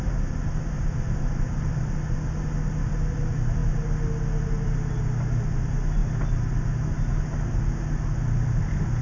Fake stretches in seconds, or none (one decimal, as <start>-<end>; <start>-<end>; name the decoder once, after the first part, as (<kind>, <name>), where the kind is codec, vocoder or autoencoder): none